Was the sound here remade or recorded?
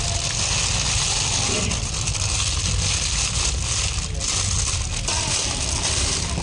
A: recorded